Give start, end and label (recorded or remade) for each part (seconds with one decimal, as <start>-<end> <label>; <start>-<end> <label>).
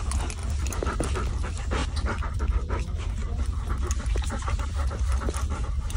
0.0-0.4 recorded; 0.4-1.3 remade; 1.3-1.8 recorded; 1.8-2.4 remade; 2.4-6.0 recorded